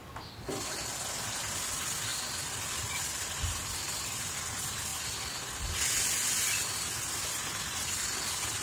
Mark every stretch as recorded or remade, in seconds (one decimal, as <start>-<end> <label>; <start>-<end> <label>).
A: 0.0-8.6 recorded